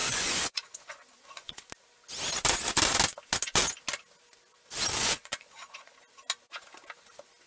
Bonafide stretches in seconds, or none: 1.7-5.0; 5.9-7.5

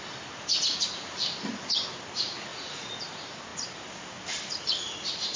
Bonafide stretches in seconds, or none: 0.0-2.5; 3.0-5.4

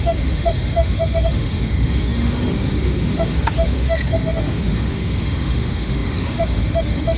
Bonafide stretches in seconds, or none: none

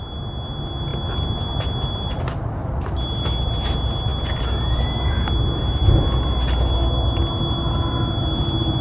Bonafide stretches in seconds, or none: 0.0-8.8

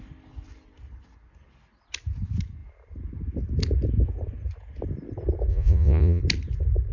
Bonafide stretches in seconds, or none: 0.0-5.5; 6.2-6.9

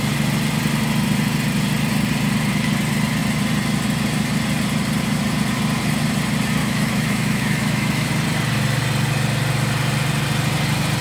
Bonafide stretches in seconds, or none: 0.0-6.6; 8.1-11.0

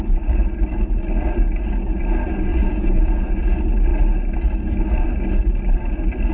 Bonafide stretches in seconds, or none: 0.0-2.5; 3.4-6.3